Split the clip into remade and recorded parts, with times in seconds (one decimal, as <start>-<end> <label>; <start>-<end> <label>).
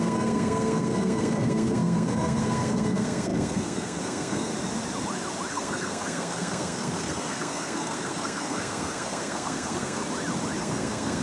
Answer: 0.0-4.5 remade; 4.5-5.5 recorded; 5.5-10.0 remade; 10.0-10.6 recorded; 10.6-11.2 remade